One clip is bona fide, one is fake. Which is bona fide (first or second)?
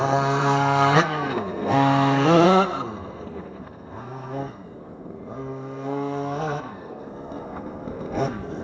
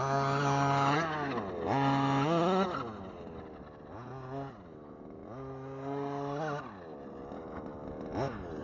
second